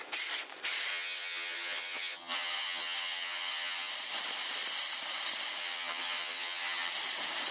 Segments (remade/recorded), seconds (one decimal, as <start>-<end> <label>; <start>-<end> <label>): 0.0-0.9 recorded; 0.9-3.9 remade; 3.9-5.6 recorded; 5.6-6.9 remade; 6.9-7.5 recorded